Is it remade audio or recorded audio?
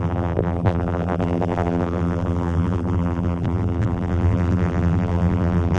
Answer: remade